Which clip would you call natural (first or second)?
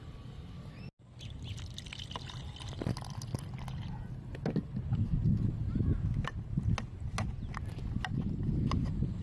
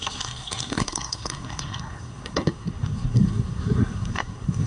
first